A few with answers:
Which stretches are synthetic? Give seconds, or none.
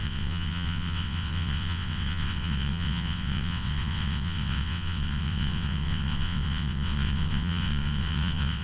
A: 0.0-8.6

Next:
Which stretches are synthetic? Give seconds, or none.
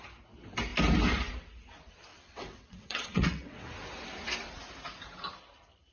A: 2.1-3.7